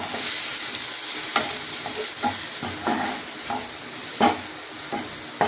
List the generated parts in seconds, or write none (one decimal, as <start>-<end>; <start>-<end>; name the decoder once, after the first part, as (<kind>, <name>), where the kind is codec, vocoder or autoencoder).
none